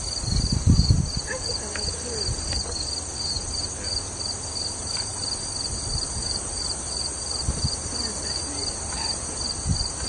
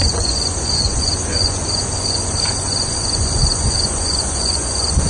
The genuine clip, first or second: first